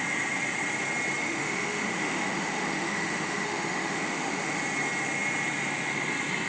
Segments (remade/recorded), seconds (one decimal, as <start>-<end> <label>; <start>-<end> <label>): 0.0-1.2 recorded; 1.2-4.6 remade; 4.6-6.5 recorded